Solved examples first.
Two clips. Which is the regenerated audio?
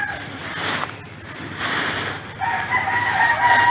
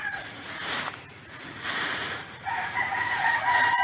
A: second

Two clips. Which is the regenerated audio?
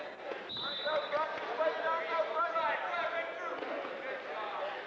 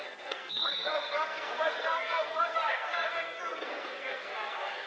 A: second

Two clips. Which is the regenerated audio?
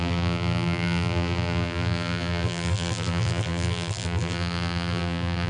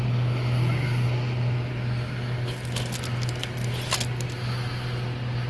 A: first